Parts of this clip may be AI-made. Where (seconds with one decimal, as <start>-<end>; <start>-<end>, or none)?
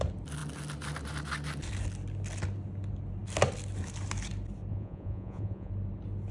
4.7-5.7